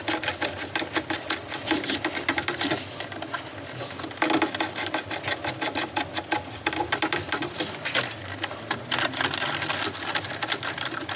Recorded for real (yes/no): yes